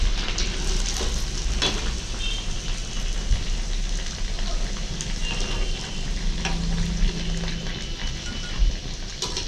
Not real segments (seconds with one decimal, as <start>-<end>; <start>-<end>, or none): none